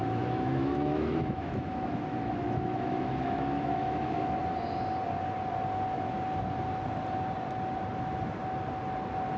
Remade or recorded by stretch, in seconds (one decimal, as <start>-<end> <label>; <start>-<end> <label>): 0.0-4.4 remade; 4.4-9.4 recorded